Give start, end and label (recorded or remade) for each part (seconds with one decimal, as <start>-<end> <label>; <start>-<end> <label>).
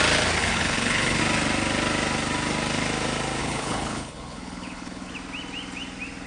0.0-0.4 recorded; 0.4-1.2 remade; 1.2-3.4 recorded; 3.4-5.1 remade; 5.1-6.3 recorded